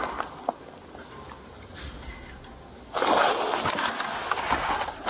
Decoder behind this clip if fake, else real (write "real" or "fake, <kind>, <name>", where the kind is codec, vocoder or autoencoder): real